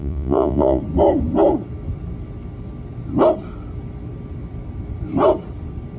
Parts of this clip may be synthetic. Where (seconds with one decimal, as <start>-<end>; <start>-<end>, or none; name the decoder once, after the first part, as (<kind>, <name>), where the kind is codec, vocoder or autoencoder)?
0.0-0.8 (vocoder, Vocos)